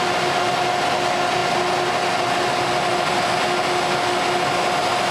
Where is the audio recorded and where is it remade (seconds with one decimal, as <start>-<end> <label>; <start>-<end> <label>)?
0.0-5.1 recorded